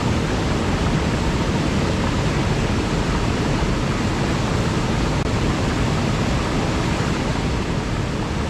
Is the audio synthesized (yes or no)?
no